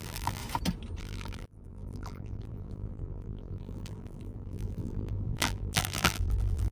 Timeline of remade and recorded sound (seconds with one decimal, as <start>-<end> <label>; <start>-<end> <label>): 0.0-0.4 remade; 0.4-1.0 recorded; 1.0-6.7 remade